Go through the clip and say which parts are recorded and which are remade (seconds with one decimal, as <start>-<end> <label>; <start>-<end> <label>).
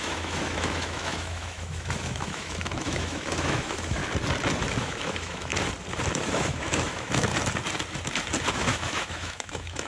0.0-4.0 remade; 4.0-4.8 recorded; 4.8-5.5 remade; 5.5-6.1 recorded; 6.1-7.3 remade; 7.3-8.5 recorded; 8.5-9.9 remade